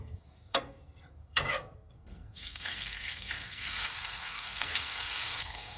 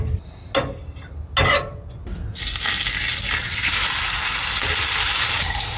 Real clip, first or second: second